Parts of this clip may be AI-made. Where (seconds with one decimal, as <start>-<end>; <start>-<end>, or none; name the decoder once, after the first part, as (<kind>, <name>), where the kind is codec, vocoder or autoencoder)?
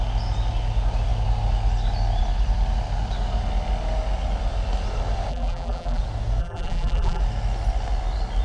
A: 5.3-6.0 (vocoder, BigVGAN v2); 6.4-7.2